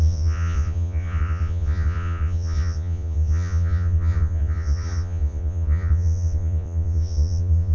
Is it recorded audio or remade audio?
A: remade